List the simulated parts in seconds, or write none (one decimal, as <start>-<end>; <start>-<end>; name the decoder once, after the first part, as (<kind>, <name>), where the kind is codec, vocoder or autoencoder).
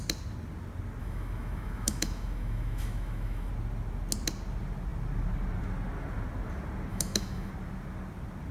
1.0-3.5 (autoencoder, DAC-VAE); 6.9-7.5